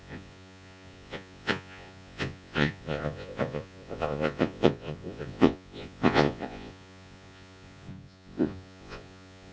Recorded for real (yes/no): no